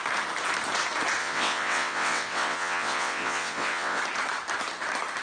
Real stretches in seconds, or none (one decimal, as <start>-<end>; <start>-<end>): 0.0-1.2; 4.0-5.2